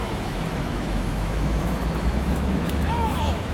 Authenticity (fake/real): fake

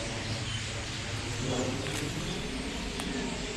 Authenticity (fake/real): real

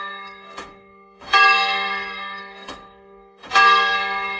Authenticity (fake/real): fake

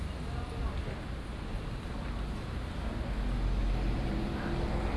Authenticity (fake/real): real